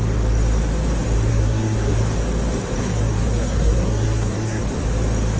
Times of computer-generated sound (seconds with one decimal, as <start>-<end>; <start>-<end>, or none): 1.3-1.9; 2.8-4.6